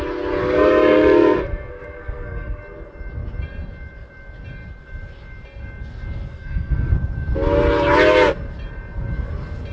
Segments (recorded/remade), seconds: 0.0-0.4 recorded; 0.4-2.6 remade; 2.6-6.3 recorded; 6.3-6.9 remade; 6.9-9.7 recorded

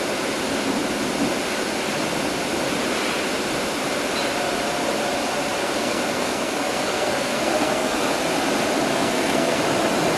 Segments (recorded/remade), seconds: 0.0-5.6 recorded; 5.6-8.2 remade; 8.2-8.9 recorded; 8.9-9.6 remade; 9.6-10.2 recorded

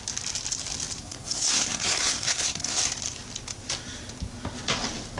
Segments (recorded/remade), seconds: 0.0-1.0 recorded; 1.0-2.8 remade; 2.8-5.2 recorded

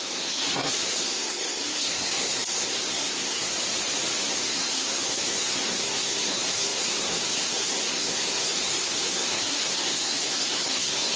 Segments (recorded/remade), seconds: 0.0-3.5 remade; 3.5-4.3 recorded; 4.3-11.2 remade

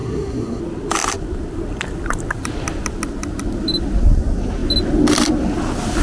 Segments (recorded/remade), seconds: 0.0-0.6 remade; 0.6-6.0 recorded